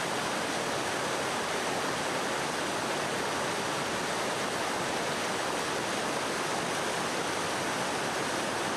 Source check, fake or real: real